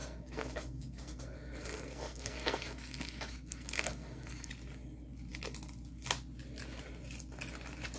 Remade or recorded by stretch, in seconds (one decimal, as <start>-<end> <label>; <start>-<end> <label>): 0.0-4.5 remade; 4.5-8.0 recorded

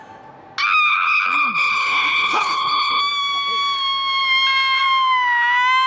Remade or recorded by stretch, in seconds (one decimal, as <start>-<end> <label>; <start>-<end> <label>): 0.0-0.9 recorded; 0.9-3.0 remade; 3.0-5.9 recorded

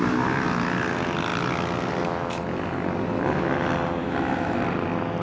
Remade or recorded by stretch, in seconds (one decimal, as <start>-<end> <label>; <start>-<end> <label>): 0.0-4.0 recorded; 4.0-4.6 remade; 4.6-5.2 recorded